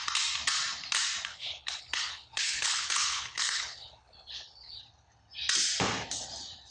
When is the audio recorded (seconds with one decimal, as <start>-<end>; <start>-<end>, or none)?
0.0-1.3; 4.8-6.7